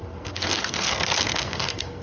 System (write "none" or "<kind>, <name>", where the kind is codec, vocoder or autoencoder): codec, SNAC